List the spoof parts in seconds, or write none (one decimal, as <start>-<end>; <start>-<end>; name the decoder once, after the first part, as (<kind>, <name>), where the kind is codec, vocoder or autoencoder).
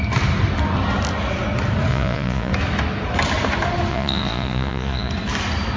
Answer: 1.9-2.5 (vocoder, Vocos); 3.9-5.1